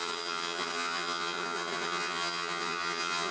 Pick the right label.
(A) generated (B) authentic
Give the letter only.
A